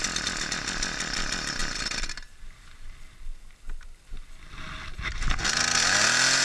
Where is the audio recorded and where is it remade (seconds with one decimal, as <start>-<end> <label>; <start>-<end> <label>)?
0.0-6.4 recorded